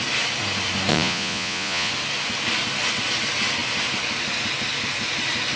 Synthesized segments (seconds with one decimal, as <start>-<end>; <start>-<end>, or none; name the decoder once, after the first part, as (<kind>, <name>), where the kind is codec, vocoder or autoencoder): 0.9-1.9 (vocoder, Vocos)